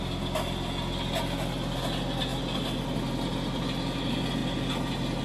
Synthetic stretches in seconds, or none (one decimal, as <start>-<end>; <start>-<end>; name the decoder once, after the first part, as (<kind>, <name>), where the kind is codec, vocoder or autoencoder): none